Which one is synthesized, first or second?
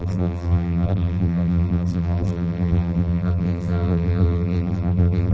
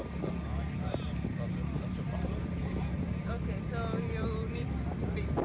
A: first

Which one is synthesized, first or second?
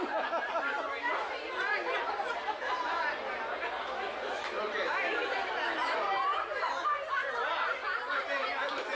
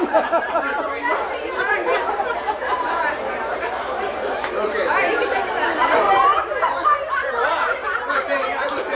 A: second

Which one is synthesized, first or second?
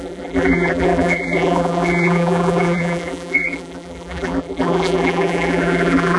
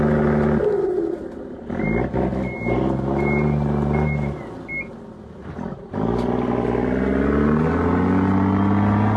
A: first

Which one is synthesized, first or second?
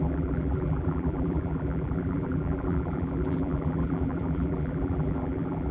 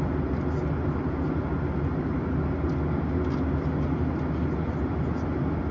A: first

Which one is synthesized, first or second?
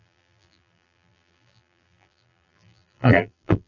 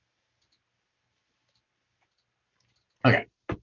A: first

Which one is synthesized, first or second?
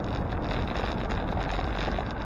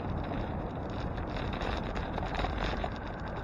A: second